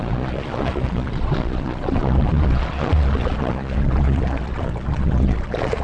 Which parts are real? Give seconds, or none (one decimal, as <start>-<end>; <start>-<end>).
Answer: none